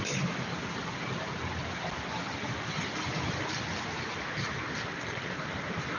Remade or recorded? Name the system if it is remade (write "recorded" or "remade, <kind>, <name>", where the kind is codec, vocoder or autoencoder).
recorded